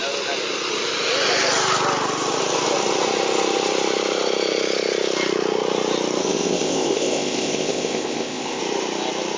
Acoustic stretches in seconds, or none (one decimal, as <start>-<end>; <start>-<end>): 0.0-6.2; 8.6-9.4